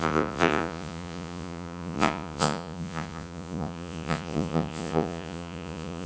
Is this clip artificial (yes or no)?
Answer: yes